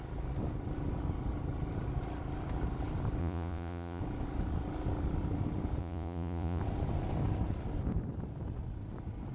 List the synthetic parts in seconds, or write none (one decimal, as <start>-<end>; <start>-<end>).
3.2-4.0; 5.8-6.6